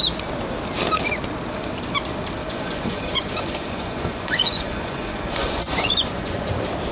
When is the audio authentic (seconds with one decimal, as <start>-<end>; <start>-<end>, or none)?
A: 0.0-2.4; 6.5-6.9